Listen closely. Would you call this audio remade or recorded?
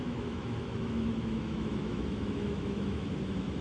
remade